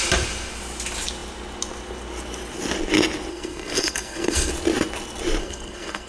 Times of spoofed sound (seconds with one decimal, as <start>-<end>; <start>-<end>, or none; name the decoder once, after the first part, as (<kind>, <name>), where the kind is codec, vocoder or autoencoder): 3.3-4.5 (codec, SNAC); 5.4-6.1